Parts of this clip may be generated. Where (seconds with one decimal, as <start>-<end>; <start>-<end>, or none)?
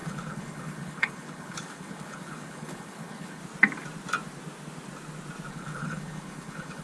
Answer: 0.0-3.4; 5.5-6.8